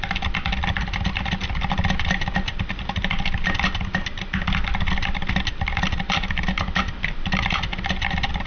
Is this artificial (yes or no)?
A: no